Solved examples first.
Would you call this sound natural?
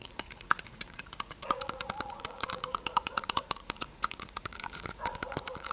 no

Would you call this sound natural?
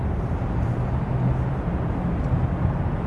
yes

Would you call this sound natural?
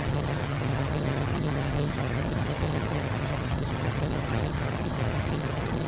no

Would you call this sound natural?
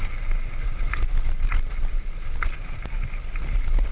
yes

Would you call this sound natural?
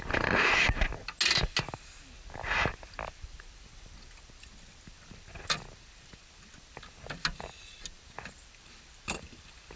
yes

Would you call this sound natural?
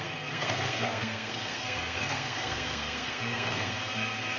no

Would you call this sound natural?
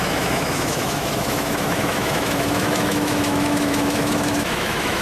no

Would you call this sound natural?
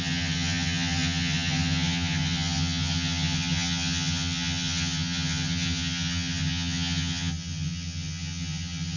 no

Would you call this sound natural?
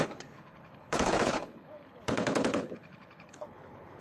no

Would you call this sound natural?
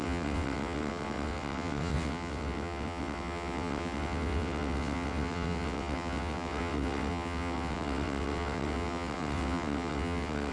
no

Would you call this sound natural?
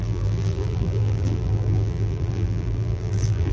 no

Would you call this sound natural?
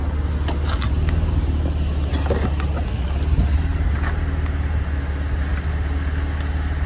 yes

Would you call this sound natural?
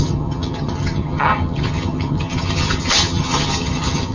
no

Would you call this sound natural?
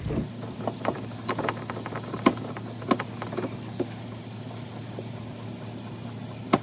yes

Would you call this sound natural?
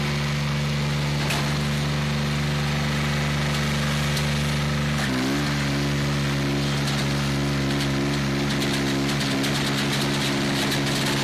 yes